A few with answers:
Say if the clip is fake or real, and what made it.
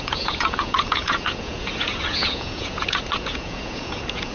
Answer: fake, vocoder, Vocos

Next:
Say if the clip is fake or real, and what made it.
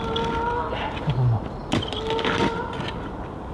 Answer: real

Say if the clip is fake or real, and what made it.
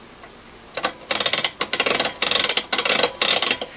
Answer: real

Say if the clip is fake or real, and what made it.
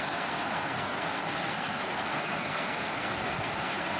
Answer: fake, codec, SNAC